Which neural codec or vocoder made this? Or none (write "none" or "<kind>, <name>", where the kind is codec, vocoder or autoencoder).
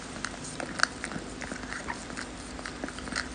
none